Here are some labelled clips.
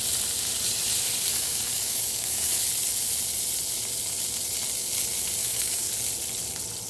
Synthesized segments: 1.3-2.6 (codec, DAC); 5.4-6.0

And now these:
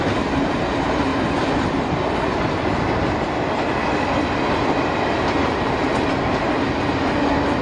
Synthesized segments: none

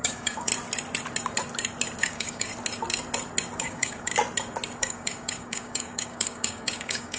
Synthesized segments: 0.0-0.5 (codec, DAC); 2.0-2.5; 3.6-4.1; 4.8-7.2

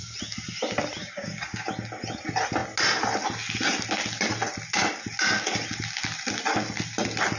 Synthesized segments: 1.0-1.7 (codec, DAC)

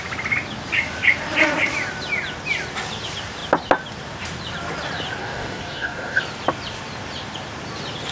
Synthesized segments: 5.2-6.2 (codec, DAC)

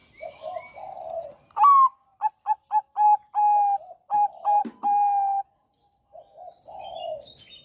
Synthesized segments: none